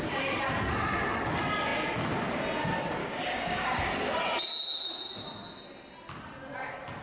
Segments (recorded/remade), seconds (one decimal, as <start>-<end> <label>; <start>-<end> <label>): 0.0-3.0 recorded; 3.0-3.9 remade; 3.9-7.0 recorded